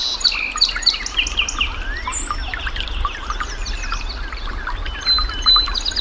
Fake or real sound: real